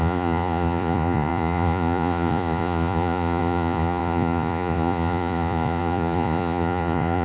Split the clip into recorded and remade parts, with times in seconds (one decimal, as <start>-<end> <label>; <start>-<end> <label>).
0.0-7.2 remade